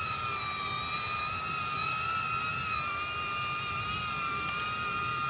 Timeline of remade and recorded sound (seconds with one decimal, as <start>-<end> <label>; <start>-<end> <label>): 0.0-5.3 recorded